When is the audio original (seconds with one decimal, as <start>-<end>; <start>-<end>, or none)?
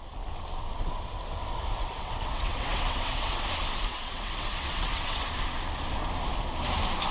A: 0.0-1.4; 3.5-3.9; 5.3-7.1